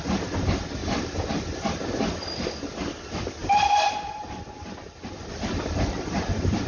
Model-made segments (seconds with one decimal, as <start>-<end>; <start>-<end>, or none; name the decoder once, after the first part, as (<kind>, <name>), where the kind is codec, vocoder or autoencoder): 0.8-1.8 (vocoder, BigVGAN v2); 3.4-4.1